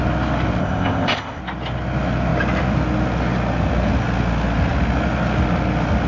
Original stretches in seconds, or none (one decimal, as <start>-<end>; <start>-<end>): 0.0-0.6; 1.4-6.1